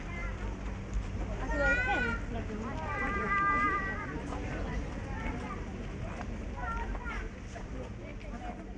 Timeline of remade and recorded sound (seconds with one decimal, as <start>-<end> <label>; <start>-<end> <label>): 0.0-8.8 recorded